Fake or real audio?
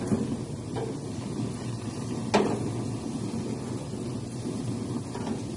real